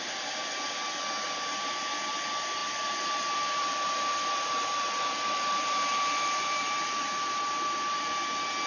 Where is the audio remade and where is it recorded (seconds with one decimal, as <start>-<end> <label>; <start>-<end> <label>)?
0.0-2.6 recorded; 2.6-7.3 remade; 7.3-8.7 recorded